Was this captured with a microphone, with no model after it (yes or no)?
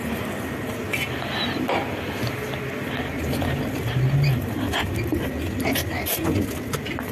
yes